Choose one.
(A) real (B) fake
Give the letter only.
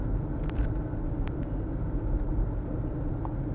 A